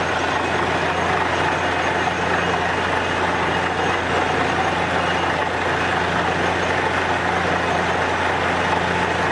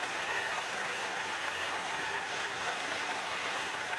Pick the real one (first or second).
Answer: first